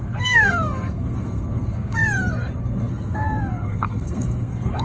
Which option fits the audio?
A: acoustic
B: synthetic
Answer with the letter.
B